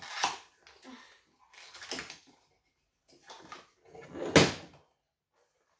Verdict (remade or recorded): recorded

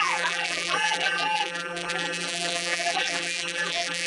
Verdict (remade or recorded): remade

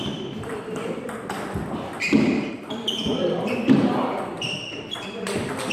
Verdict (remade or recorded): remade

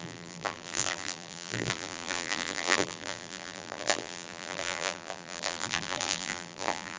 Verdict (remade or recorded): remade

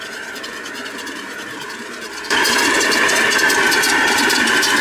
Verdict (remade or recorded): remade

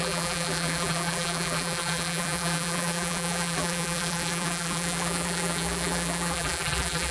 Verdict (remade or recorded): remade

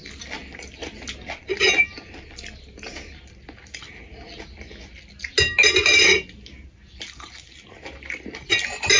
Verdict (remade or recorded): recorded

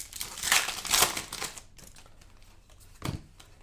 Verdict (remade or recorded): recorded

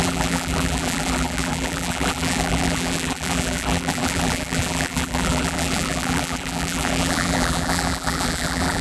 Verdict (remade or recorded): remade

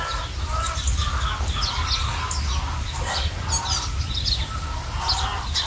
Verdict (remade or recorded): recorded